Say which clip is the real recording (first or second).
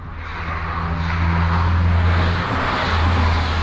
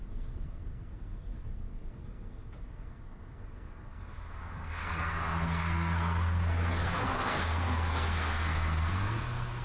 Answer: first